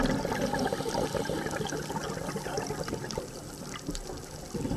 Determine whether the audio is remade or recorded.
recorded